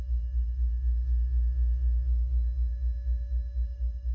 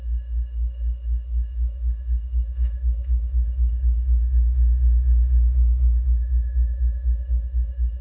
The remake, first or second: second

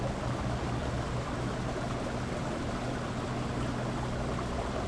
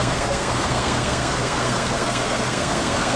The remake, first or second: second